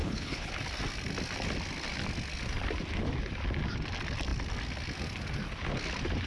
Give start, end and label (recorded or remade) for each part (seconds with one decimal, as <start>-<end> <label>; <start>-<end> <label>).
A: 0.0-0.5 remade; 0.5-6.3 recorded